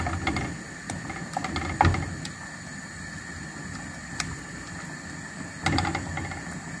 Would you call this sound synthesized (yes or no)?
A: no